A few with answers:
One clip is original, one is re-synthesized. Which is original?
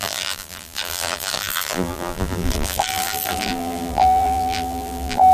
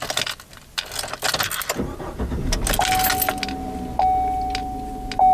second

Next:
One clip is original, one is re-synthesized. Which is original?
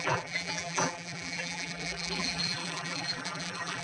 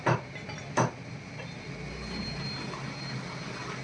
second